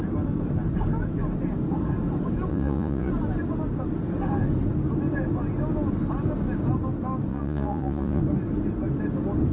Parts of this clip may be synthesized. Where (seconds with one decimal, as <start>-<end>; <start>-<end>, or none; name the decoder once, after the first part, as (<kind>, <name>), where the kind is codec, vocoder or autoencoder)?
2.5-3.1 (vocoder, Vocos); 7.3-8.2